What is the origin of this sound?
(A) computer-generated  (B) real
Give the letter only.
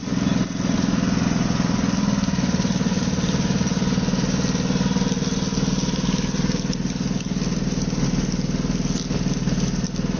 B